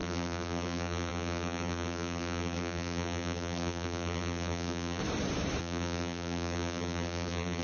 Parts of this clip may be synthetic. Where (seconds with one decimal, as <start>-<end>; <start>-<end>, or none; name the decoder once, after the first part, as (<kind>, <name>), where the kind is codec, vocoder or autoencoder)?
0.0-5.0 (vocoder, BigVGAN v2); 5.6-7.6